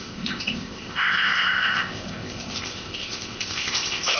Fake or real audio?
fake